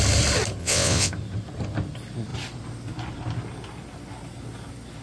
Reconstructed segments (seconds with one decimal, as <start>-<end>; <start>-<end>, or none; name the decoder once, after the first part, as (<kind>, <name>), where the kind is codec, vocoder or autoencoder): 0.6-1.1 (vocoder, WaveNeXt)